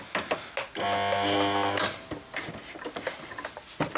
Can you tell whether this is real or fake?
real